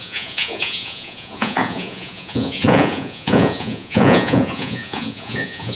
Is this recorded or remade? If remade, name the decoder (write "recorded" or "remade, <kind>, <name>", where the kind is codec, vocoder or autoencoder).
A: remade, vocoder, Vocos